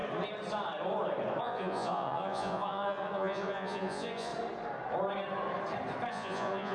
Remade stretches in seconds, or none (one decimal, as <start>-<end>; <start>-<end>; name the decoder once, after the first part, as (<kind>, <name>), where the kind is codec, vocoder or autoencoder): 1.4-4.3 (vocoder, Vocos); 6.1-6.7